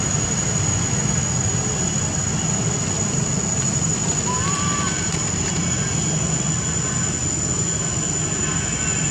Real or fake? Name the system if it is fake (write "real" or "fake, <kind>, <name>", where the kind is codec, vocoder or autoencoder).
real